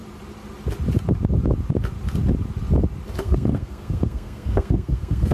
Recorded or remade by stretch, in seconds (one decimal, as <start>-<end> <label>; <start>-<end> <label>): 0.0-3.2 recorded; 3.2-5.3 remade